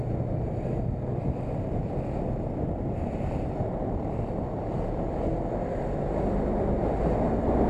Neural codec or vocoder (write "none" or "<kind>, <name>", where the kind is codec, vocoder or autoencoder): none